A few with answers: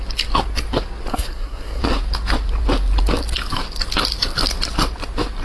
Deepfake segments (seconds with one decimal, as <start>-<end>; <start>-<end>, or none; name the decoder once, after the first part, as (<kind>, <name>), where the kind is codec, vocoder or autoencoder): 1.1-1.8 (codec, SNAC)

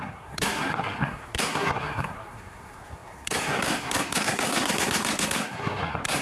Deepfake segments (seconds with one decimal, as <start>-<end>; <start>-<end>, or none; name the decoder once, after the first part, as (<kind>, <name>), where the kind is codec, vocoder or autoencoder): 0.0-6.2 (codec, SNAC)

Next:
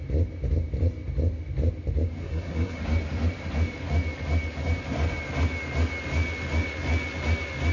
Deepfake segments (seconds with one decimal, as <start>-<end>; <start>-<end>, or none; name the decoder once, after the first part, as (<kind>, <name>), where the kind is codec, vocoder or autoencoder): 2.2-2.8 (codec, SNAC)

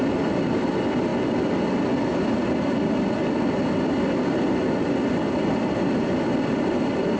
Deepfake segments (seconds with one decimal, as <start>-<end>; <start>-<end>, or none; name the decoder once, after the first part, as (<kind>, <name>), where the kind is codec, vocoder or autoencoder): none

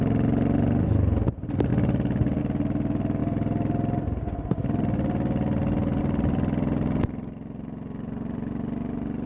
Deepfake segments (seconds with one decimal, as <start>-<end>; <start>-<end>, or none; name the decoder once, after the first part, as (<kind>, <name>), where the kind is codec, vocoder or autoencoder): none